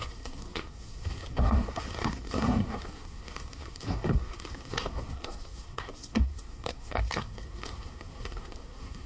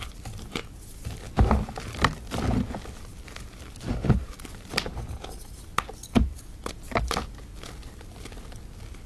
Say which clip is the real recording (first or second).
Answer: second